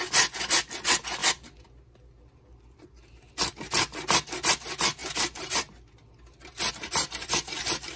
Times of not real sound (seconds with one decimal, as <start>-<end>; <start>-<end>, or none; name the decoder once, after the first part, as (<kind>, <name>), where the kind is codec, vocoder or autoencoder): none